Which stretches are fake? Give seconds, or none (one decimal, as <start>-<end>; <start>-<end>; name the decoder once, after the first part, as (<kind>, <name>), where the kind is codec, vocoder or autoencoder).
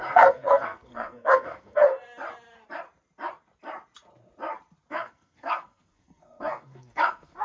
0.0-1.8 (codec, SNAC); 4.9-7.4